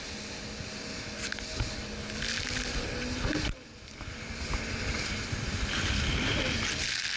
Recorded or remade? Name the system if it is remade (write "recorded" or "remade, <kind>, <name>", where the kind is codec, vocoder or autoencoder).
recorded